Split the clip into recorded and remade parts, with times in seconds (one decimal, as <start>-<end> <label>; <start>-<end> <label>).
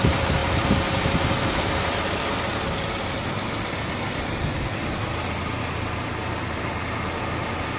0.0-7.8 recorded